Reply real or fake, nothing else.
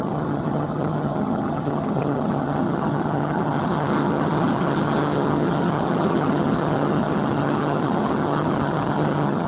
fake